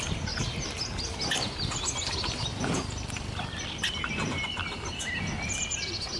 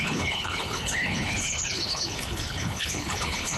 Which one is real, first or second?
first